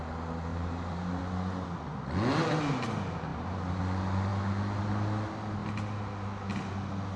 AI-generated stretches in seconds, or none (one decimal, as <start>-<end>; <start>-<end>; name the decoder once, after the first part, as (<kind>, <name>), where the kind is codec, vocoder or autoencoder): 0.5-1.2 (vocoder, BigVGAN v2); 3.3-3.8